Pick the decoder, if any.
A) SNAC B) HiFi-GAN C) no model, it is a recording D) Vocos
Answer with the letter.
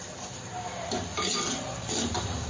C